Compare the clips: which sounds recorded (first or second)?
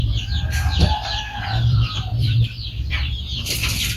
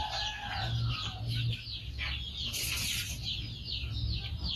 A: second